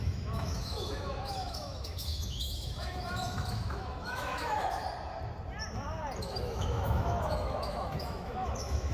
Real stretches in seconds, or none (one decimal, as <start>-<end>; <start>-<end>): 4.8-6.2